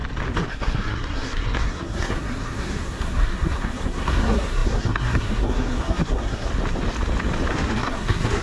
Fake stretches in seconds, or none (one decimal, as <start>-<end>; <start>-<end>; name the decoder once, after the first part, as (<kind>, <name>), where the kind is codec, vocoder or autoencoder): 0.5-6.5 (codec, SNAC); 7.5-8.4